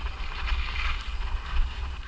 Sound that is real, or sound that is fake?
real